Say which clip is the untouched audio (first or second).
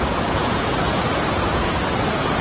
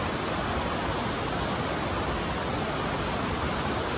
second